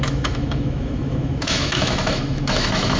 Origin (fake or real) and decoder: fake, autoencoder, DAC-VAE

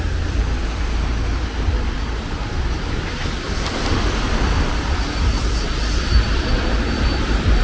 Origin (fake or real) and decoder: fake, vocoder, BigVGAN v2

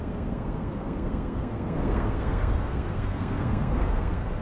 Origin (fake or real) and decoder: fake, codec, SNAC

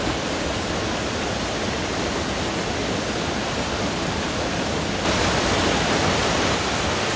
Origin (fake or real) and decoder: real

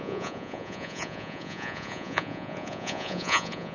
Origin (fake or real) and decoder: fake, vocoder, Vocos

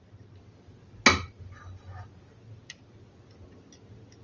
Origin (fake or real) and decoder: real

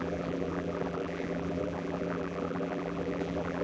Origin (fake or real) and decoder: fake, vocoder, BigVGAN v2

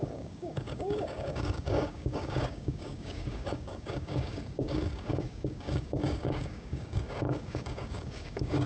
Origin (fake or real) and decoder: fake, codec, DAC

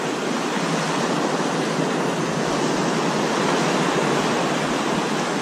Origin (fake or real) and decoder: real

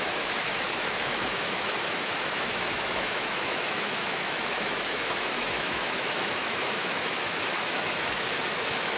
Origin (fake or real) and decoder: fake, autoencoder, DAC-VAE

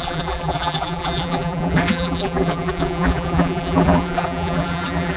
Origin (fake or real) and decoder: fake, vocoder, BigVGAN v2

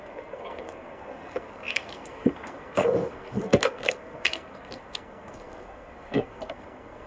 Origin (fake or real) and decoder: fake, codec, SNAC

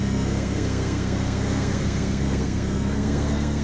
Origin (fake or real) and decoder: fake, codec, SNAC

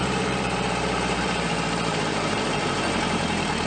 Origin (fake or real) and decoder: fake, vocoder, BigVGAN v2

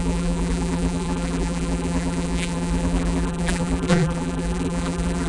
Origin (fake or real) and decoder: fake, vocoder, BigVGAN v2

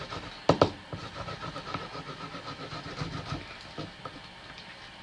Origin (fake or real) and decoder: real